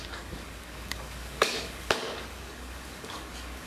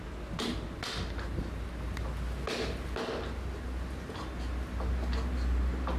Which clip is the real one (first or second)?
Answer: second